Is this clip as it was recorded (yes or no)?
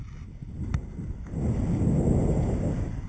yes